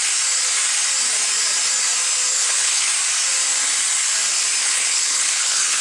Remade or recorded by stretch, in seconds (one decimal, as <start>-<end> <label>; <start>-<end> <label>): 0.0-2.3 recorded; 2.3-2.9 remade; 2.9-4.6 recorded; 4.6-5.8 remade